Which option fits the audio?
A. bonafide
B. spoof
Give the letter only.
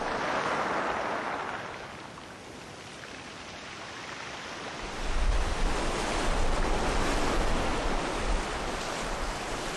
A